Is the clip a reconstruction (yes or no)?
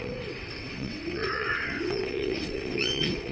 yes